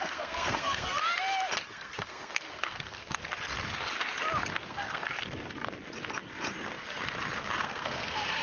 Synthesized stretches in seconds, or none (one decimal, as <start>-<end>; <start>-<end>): 0.0-1.0; 1.7-3.2; 4.5-5.0; 7.6-8.4

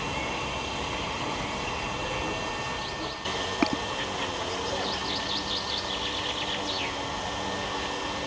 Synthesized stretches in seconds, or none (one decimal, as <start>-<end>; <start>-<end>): none

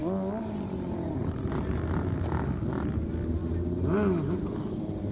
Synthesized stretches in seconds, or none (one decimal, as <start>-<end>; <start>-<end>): none

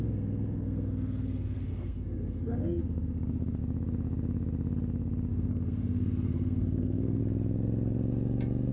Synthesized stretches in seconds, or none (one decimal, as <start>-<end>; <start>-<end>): 0.0-3.6; 5.3-7.2

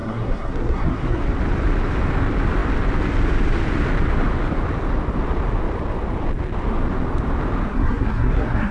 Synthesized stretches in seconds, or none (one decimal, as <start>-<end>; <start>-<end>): 0.0-1.2; 7.7-8.7

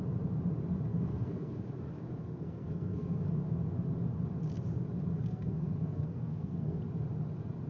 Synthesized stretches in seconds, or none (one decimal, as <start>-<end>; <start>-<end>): 0.9-1.6; 2.2-3.3; 5.1-6.8

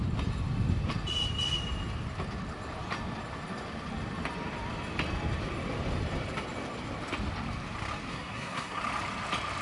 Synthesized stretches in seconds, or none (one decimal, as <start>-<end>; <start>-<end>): 8.1-8.8

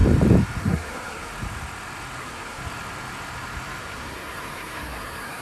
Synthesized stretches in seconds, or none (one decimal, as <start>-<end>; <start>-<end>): 0.6-1.3; 2.2-2.6; 3.8-5.4